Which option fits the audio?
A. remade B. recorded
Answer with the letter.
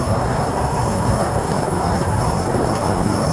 A